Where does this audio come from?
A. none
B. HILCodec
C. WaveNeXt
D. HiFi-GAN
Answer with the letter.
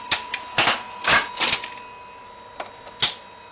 A